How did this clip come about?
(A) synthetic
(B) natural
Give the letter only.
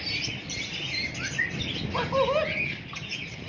B